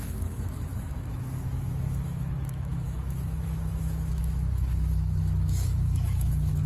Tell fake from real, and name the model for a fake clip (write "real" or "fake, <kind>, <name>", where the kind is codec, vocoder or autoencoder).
fake, autoencoder, DAC-VAE